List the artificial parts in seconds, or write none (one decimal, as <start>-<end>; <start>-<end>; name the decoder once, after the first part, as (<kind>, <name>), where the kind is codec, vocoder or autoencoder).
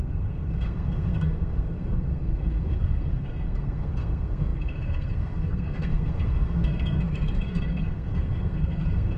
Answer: 0.0-9.2 (codec, SNAC)